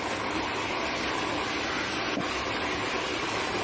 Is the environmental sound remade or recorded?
recorded